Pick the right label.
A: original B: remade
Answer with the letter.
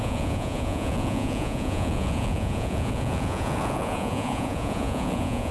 B